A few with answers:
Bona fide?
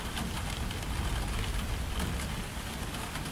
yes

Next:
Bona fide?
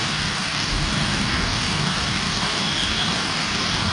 no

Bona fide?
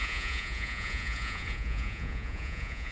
no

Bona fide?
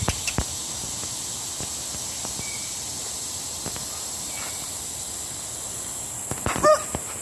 yes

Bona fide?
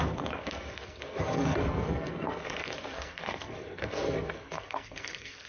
no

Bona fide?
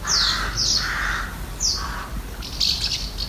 yes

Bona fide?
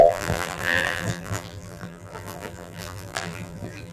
no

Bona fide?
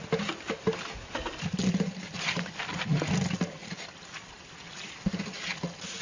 yes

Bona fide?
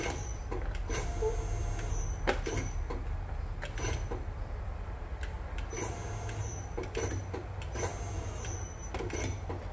yes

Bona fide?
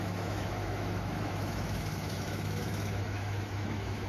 no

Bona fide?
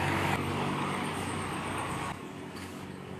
no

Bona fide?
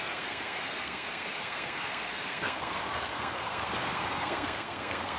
no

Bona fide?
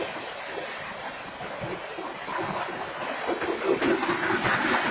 no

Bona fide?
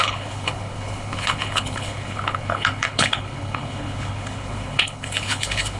no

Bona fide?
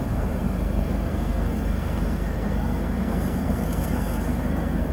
no